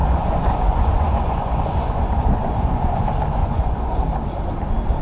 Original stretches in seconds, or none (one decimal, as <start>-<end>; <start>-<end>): 3.0-3.4; 4.0-5.0